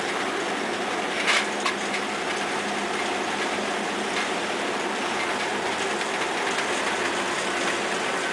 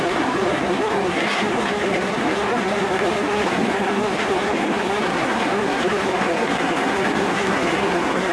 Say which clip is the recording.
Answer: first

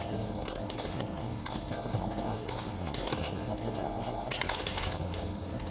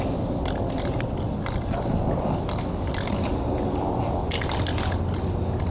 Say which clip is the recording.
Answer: second